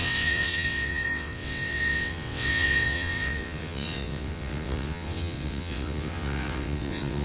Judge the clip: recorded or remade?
remade